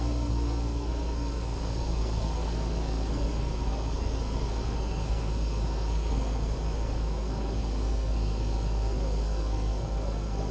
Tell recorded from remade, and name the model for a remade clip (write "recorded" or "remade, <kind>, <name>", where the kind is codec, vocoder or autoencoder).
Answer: remade, codec, SNAC